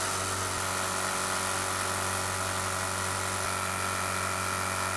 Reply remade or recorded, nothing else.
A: recorded